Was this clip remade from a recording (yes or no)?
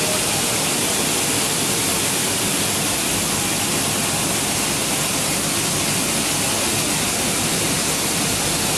yes